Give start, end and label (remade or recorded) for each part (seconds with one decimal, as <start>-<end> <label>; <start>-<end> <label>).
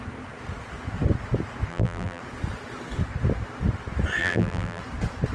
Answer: 0.0-1.7 recorded; 1.7-2.2 remade; 2.2-4.2 recorded; 4.2-4.8 remade; 4.8-5.3 recorded